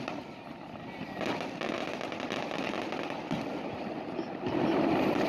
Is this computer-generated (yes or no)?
no